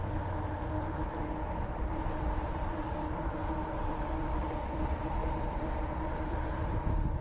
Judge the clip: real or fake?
fake